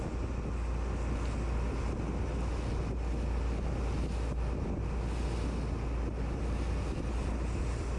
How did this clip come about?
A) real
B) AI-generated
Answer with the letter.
A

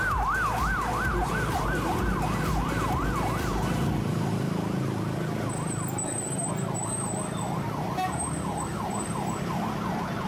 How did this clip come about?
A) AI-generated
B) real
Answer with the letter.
B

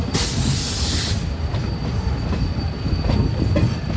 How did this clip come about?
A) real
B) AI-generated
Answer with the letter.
A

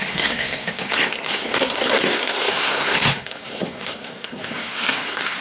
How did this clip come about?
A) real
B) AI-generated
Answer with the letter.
B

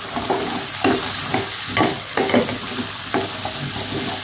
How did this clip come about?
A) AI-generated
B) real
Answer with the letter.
B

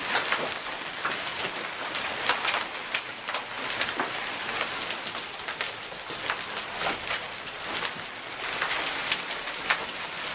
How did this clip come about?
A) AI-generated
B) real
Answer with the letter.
B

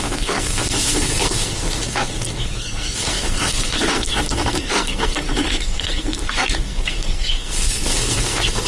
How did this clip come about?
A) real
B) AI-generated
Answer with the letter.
B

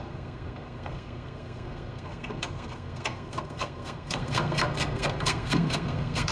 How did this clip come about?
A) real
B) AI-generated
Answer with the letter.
B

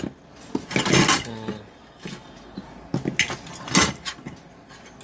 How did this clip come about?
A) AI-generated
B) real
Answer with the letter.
B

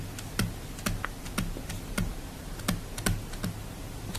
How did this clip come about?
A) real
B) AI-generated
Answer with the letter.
A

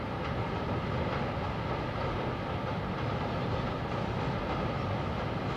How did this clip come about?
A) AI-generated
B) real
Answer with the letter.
B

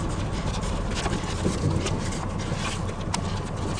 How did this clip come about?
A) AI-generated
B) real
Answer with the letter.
B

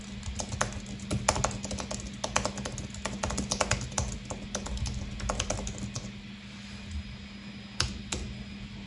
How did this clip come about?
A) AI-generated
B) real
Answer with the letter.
B